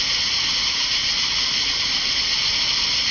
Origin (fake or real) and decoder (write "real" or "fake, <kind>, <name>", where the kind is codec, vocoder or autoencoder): real